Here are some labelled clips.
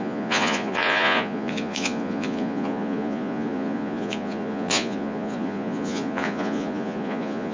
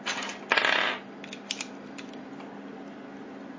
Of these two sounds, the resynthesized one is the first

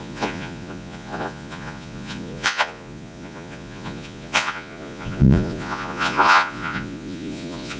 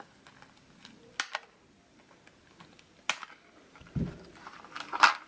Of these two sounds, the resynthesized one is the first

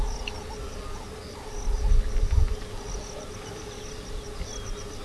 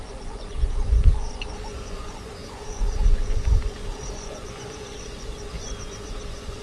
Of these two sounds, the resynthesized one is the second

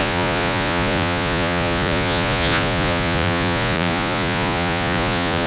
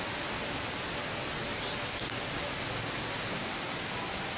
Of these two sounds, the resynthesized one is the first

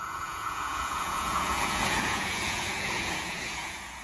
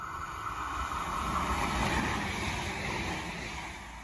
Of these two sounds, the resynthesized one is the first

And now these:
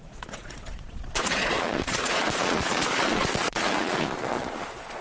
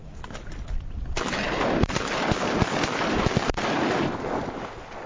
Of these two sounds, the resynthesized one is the first